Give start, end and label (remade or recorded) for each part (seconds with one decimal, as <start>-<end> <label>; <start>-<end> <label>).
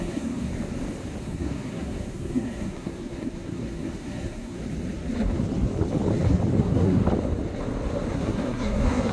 0.0-0.5 remade; 0.5-1.2 recorded; 1.2-4.6 remade; 4.6-6.6 recorded; 6.6-7.0 remade; 7.0-8.1 recorded; 8.1-9.1 remade